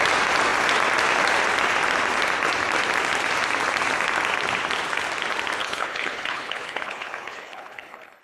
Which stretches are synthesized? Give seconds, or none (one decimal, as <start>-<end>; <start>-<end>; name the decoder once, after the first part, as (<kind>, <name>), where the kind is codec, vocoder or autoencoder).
5.6-8.2 (codec, HILCodec)

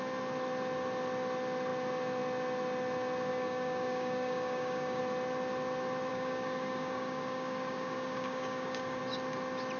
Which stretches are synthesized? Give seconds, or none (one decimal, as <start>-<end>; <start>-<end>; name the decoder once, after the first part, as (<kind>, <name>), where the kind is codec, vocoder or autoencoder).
3.3-5.0 (codec, DAC); 6.1-9.0

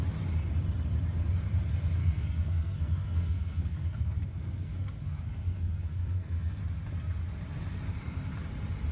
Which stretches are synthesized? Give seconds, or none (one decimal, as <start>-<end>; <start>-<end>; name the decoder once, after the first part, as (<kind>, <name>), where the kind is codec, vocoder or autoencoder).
2.0-6.6 (codec, SNAC)

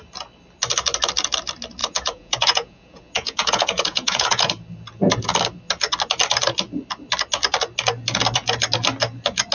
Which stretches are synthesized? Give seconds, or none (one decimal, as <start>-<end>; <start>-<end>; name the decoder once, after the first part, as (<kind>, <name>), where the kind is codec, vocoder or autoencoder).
1.8-4.5 (vocoder, Vocos)

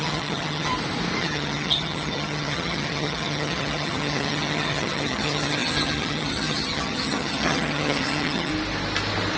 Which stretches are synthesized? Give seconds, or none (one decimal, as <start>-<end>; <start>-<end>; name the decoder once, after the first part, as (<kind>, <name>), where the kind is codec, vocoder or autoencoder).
0.0-0.7 (vocoder, HiFi-GAN); 1.2-8.5

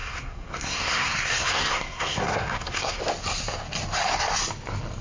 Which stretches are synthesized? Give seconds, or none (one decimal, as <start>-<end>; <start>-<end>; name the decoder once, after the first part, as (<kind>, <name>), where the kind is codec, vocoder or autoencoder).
0.0-3.0 (codec, SNAC)

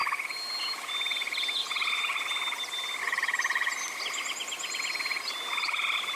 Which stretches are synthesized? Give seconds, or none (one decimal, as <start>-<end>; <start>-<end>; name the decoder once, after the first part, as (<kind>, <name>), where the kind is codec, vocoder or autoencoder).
none